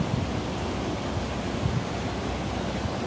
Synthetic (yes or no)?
no